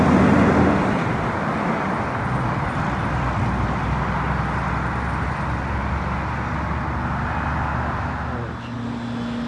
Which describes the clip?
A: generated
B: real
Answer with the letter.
B